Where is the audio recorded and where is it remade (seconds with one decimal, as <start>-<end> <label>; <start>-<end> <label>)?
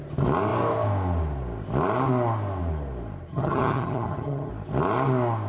0.0-3.3 recorded; 3.3-4.5 remade; 4.5-5.5 recorded